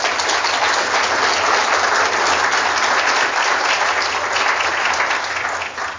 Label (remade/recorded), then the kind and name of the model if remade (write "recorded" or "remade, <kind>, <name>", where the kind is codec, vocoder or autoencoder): recorded